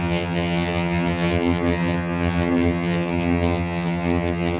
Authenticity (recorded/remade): remade